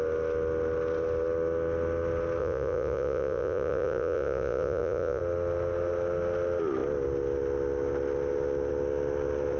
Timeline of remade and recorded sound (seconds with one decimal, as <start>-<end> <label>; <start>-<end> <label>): 0.0-2.4 recorded; 2.4-5.2 remade; 5.2-9.6 recorded